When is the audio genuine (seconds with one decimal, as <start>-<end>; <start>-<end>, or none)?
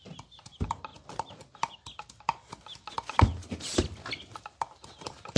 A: 0.0-5.4